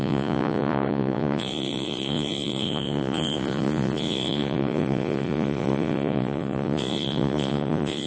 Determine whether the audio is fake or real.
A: fake